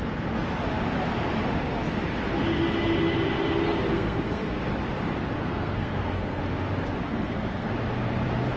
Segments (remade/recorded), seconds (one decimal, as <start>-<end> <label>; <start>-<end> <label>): 0.0-3.9 recorded; 3.9-4.6 remade; 4.6-5.4 recorded; 5.4-6.4 remade; 6.4-7.1 recorded; 7.1-7.7 remade; 7.7-8.6 recorded